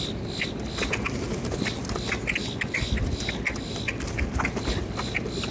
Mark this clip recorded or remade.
recorded